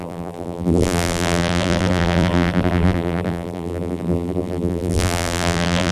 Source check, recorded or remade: remade